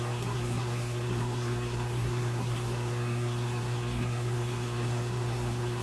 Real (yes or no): no